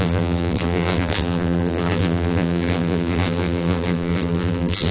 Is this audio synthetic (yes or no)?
yes